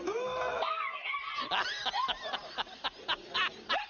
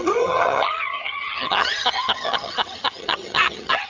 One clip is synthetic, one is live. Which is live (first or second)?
first